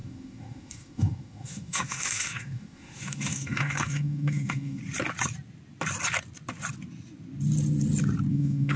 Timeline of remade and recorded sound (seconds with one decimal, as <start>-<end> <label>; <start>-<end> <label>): 0.0-4.8 remade; 4.8-8.3 recorded; 8.3-8.8 remade